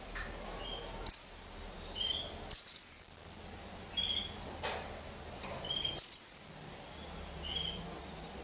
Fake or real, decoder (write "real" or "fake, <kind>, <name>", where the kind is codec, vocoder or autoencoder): real